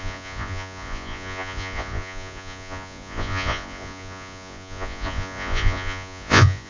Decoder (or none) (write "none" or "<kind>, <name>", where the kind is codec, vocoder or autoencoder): vocoder, Vocos